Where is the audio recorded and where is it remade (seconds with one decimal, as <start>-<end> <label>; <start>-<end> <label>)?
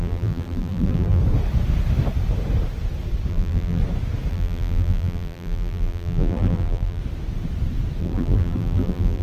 0.0-1.2 remade; 1.2-3.3 recorded; 3.3-3.8 remade; 3.8-4.3 recorded; 4.3-7.0 remade; 7.0-8.0 recorded; 8.0-9.2 remade